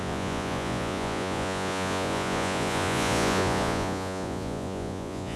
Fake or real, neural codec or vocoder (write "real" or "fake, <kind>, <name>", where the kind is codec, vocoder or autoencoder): fake, vocoder, Vocos